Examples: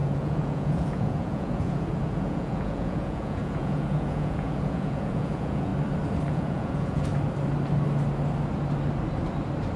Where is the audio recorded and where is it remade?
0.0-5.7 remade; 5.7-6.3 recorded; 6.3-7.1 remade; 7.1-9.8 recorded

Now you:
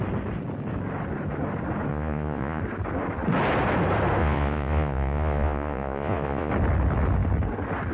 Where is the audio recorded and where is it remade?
0.0-1.9 recorded; 1.9-2.6 remade; 2.6-4.2 recorded; 4.2-6.5 remade; 6.5-7.9 recorded